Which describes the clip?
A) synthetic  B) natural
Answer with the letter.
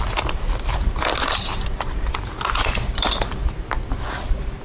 B